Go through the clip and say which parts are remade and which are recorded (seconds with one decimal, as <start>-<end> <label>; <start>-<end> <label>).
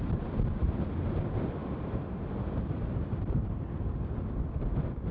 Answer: 0.0-5.1 recorded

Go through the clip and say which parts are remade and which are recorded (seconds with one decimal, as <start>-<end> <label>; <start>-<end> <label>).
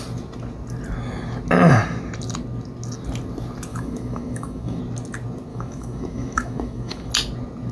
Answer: 0.0-3.7 recorded; 3.7-4.8 remade; 4.8-5.5 recorded; 5.5-7.1 remade; 7.1-7.7 recorded